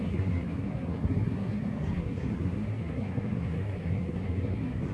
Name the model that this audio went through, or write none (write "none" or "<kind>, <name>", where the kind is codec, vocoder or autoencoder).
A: codec, SNAC